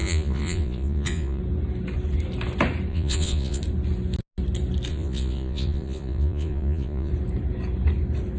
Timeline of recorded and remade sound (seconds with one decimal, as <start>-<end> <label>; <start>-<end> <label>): 0.0-1.4 remade; 1.4-2.9 recorded; 2.9-3.6 remade; 3.6-4.9 recorded; 4.9-7.1 remade; 7.1-8.4 recorded